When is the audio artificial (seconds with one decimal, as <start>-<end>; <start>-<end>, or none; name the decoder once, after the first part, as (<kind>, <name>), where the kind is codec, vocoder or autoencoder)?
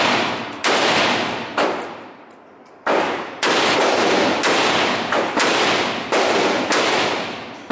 none